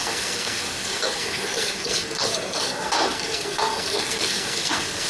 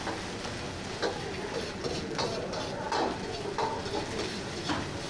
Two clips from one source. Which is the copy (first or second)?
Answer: first